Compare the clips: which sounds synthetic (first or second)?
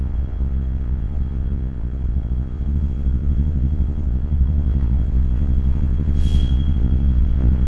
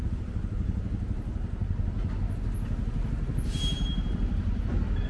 first